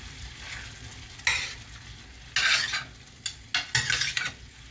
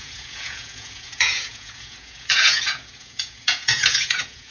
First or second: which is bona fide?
first